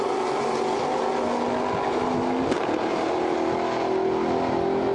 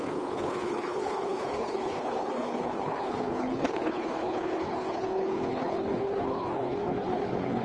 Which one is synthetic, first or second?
second